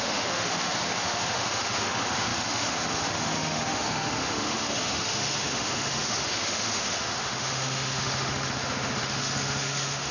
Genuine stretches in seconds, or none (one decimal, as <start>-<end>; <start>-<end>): none